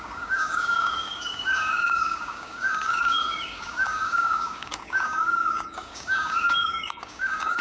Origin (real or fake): fake